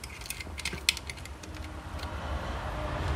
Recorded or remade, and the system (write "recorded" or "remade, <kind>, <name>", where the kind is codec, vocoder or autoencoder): recorded